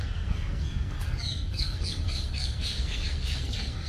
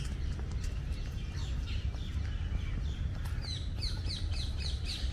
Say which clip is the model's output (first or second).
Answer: first